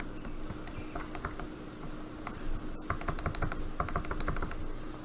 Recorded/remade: recorded